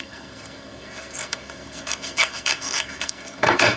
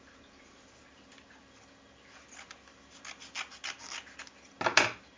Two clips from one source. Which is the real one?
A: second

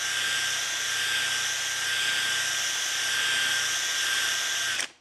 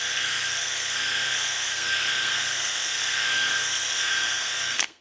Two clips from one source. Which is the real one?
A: first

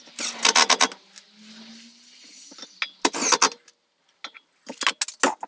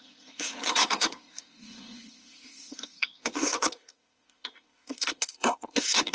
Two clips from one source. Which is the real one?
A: first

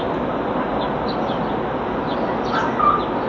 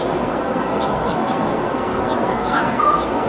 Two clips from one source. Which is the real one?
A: first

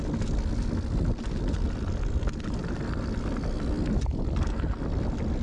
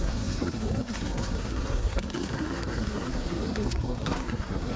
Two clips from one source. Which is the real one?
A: first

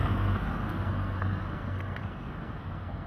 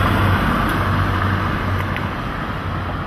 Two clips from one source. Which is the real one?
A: second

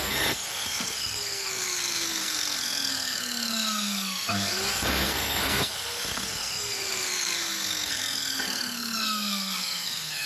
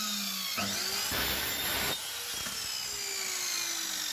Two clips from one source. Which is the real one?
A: second